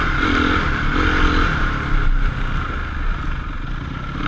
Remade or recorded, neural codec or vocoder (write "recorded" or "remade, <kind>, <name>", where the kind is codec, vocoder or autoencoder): recorded